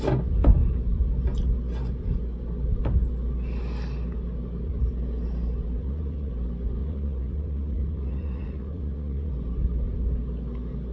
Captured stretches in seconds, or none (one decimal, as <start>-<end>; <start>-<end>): 0.0-5.8; 6.3-6.8; 9.3-10.9